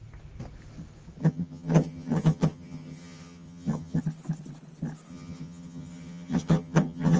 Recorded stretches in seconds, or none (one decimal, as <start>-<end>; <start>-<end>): 0.0-1.2; 4.0-5.1